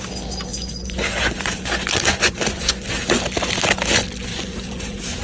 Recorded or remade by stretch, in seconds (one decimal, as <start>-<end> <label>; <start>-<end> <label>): 0.0-0.5 recorded; 0.5-3.1 remade; 3.1-4.3 recorded; 4.3-5.2 remade

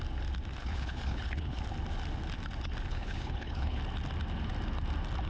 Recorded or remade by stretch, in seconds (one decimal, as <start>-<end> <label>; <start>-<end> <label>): 0.0-0.6 recorded; 0.6-1.6 remade; 1.6-2.9 recorded; 2.9-3.8 remade; 3.8-5.3 recorded

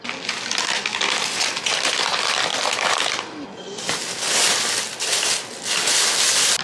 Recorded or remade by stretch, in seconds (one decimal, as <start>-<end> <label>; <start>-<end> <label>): 0.0-6.6 recorded

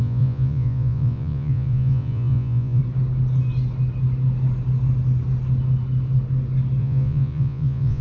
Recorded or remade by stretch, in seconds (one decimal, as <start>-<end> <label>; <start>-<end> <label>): 0.0-2.8 remade; 2.8-6.8 recorded; 6.8-8.0 remade